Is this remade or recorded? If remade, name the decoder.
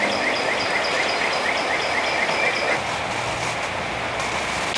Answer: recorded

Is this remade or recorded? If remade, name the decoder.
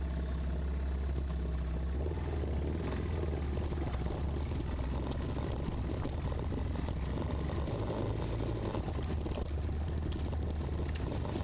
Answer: recorded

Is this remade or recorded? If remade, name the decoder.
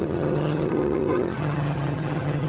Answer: remade, vocoder, HiFi-GAN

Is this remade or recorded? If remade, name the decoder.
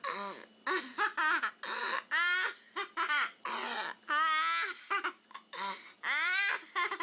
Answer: recorded